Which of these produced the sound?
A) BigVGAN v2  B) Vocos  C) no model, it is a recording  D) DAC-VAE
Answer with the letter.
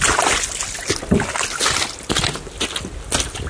C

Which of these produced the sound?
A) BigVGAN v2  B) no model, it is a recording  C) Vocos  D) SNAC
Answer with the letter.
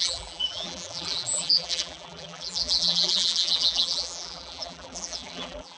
A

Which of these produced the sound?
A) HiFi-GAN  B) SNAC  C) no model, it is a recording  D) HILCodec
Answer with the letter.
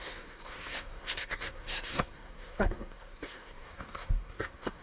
B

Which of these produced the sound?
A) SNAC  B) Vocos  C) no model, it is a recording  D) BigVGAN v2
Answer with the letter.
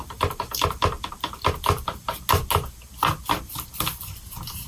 C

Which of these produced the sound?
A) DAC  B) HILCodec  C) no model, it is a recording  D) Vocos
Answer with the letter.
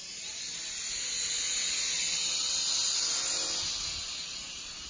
C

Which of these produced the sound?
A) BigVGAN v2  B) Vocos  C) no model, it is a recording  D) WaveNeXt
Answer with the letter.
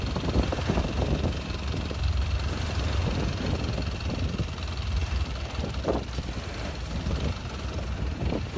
A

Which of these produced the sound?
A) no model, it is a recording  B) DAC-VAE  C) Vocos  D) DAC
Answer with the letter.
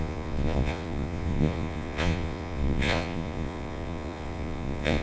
C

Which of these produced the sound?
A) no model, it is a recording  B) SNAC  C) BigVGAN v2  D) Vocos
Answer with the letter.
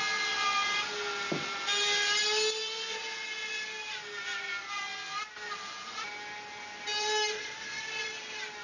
A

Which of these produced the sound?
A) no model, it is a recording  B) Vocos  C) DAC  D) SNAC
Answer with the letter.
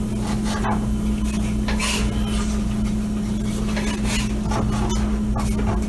A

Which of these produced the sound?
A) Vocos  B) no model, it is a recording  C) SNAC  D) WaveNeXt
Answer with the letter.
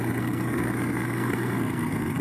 C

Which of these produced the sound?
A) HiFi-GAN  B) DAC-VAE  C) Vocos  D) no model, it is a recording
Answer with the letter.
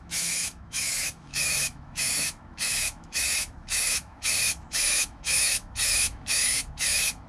B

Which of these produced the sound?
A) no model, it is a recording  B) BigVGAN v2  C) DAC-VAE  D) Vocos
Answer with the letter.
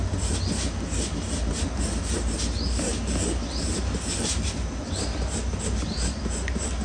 A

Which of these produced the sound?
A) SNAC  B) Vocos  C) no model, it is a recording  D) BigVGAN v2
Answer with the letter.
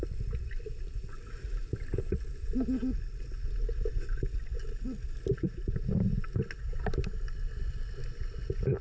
C